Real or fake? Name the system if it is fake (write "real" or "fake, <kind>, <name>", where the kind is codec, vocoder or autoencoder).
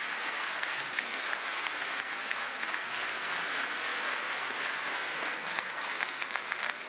fake, codec, SNAC